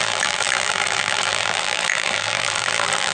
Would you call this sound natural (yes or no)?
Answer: no